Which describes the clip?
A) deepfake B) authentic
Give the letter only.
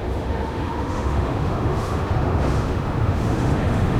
A